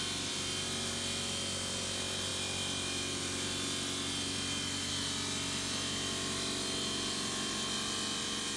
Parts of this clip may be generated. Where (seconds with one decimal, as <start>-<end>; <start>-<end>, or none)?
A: none